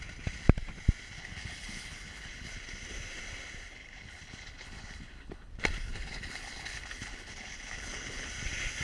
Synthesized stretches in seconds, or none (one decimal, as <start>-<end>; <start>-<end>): 1.2-2.5; 3.7-5.5; 5.9-8.3